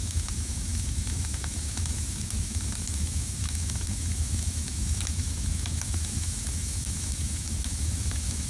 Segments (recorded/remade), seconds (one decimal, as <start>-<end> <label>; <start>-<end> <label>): 0.0-8.5 remade